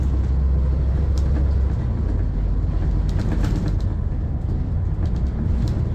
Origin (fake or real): real